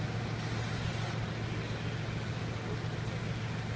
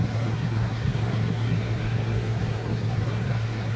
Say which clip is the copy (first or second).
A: second